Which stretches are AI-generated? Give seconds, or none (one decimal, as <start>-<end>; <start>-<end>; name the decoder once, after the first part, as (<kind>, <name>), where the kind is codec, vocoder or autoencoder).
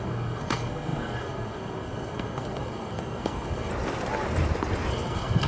0.0-3.7 (codec, SNAC); 4.9-5.5